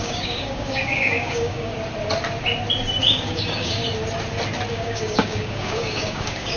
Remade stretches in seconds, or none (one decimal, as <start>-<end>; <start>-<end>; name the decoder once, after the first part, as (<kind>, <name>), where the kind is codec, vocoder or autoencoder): 0.0-1.7 (codec, DAC); 3.0-3.8; 4.7-6.6